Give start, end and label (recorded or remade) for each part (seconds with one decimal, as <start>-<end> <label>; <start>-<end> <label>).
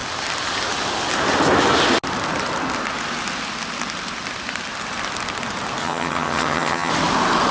0.0-5.8 recorded; 5.8-6.9 remade; 6.9-7.5 recorded